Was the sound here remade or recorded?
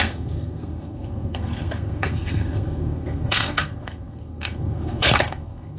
remade